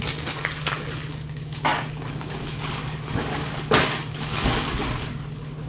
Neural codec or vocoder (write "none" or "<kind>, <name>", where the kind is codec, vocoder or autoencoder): codec, DAC